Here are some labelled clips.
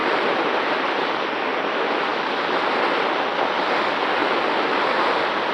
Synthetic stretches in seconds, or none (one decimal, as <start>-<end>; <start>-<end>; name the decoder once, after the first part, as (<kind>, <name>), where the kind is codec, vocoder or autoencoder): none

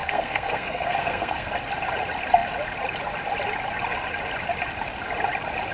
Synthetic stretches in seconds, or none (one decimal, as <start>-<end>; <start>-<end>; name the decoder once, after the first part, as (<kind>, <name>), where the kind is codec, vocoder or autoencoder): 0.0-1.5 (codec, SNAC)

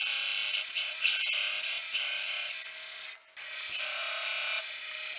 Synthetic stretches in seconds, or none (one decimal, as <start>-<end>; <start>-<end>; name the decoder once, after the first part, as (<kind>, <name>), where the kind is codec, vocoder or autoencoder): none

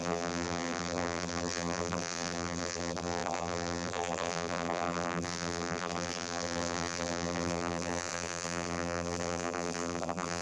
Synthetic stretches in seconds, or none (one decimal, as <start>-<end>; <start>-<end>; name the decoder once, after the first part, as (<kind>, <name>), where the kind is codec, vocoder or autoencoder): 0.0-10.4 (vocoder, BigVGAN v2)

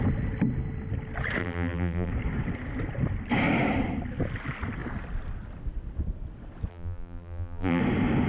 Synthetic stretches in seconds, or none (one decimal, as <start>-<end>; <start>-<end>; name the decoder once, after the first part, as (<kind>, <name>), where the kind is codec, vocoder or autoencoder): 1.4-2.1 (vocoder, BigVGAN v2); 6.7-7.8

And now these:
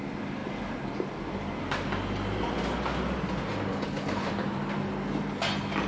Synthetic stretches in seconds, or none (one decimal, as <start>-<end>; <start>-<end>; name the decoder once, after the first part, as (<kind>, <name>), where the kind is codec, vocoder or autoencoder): 3.7-4.3 (codec, HILCodec)

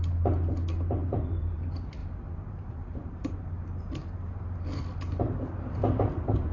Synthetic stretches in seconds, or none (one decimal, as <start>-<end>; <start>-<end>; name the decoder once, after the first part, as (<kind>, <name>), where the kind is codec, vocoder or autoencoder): 1.0-1.6 (vocoder, BigVGAN v2); 2.0-3.3

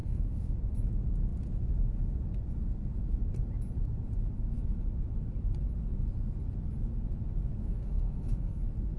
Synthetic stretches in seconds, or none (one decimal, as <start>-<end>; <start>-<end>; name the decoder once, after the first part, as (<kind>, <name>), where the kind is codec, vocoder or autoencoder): 0.0-0.5 (codec, SNAC); 7.6-8.6